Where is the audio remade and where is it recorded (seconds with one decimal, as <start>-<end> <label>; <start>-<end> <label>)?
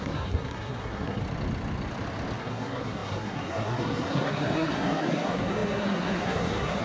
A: 0.0-1.2 remade; 1.2-2.4 recorded; 2.4-6.8 remade